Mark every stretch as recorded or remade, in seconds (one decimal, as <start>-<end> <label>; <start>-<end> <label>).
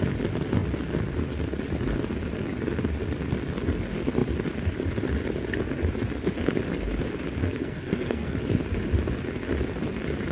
0.0-7.4 recorded; 7.4-8.4 remade; 8.4-10.3 recorded